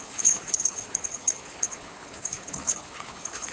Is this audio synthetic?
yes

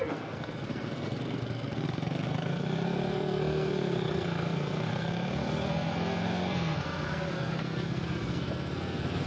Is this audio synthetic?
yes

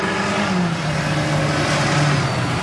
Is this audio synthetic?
no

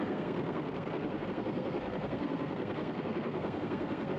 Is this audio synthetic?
yes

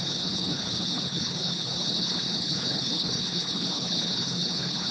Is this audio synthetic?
yes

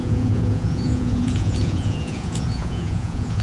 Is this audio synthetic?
yes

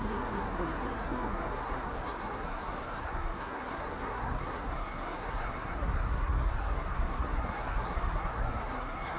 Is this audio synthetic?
yes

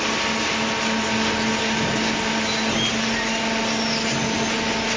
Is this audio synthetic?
no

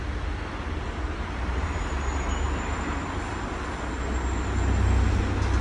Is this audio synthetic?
no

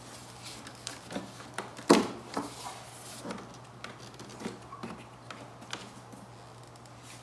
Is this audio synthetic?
no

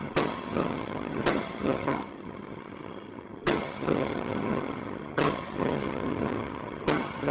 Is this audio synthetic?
yes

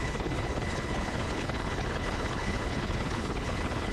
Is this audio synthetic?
yes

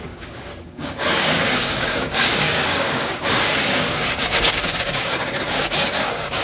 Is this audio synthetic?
yes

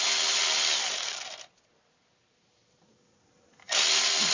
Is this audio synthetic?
no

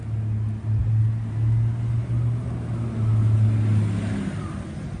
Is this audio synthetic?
no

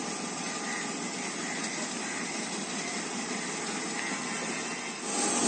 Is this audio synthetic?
no